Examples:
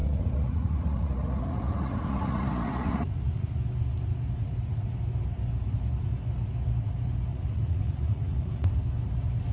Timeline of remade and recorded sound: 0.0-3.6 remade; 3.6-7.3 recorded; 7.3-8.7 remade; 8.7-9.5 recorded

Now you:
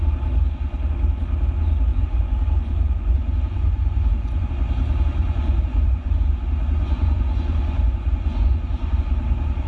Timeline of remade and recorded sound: 0.0-1.9 recorded; 1.9-4.5 remade; 4.5-5.2 recorded; 5.2-6.3 remade; 6.3-6.8 recorded; 6.8-9.1 remade; 9.1-9.7 recorded

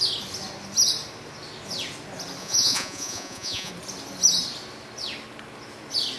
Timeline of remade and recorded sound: 0.0-2.4 recorded; 2.4-3.7 remade; 3.7-6.2 recorded

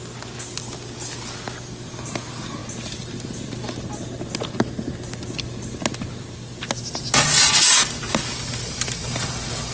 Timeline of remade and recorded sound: 0.0-9.7 recorded

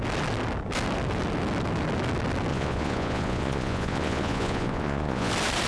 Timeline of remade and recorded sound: 0.0-2.5 recorded; 2.5-5.3 remade; 5.3-5.7 recorded